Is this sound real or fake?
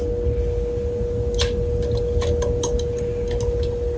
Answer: real